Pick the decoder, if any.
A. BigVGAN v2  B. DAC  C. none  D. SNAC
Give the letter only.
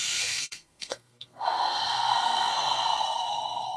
D